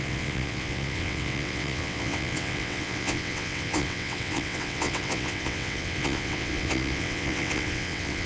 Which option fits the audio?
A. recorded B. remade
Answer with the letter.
B